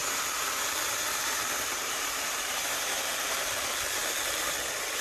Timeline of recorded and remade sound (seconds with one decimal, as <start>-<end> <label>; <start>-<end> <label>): 0.0-3.0 remade; 3.0-5.0 recorded